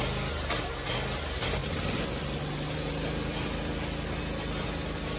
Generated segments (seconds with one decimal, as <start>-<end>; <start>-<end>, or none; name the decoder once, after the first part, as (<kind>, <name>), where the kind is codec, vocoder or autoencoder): none

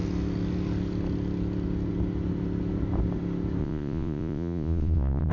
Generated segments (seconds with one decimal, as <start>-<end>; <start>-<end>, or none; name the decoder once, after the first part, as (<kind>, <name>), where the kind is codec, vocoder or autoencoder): 3.6-5.3 (vocoder, Vocos)